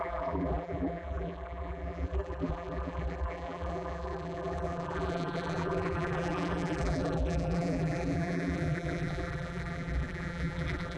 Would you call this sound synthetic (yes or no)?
yes